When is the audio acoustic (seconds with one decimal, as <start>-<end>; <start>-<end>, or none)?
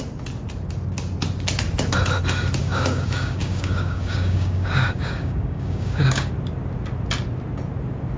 0.0-2.6; 6.3-8.2